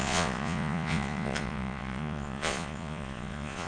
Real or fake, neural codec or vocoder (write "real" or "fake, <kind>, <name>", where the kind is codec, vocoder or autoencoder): fake, vocoder, Vocos